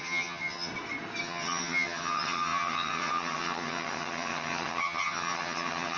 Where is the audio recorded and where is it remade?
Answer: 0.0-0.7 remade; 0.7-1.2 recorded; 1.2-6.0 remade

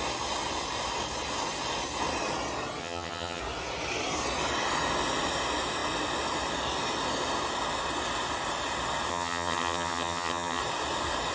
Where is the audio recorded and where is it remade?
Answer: 0.0-2.8 recorded; 2.8-3.4 remade; 3.4-9.1 recorded; 9.1-10.6 remade; 10.6-11.3 recorded

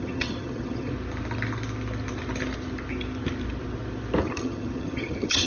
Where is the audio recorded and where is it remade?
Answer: 0.0-0.9 remade; 0.9-4.2 recorded; 4.2-5.5 remade